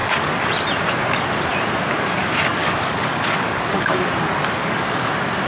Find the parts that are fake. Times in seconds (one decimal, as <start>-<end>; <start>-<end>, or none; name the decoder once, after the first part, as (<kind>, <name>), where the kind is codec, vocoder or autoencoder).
0.0-0.5 (codec, DAC); 2.6-4.1; 4.6-5.1